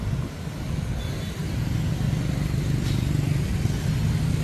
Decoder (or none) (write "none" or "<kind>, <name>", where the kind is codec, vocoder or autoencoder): none